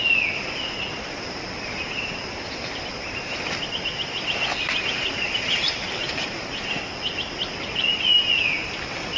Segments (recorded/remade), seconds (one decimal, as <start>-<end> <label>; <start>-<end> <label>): 0.0-9.2 recorded